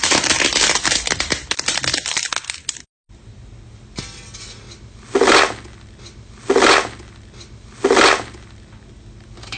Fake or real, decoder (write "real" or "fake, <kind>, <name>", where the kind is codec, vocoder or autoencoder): real